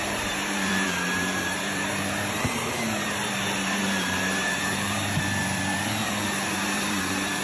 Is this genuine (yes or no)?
no